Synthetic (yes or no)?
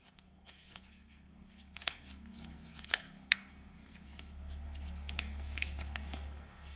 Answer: yes